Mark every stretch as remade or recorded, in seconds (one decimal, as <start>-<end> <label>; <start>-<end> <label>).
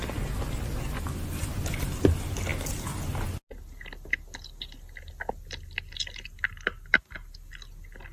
0.0-8.1 recorded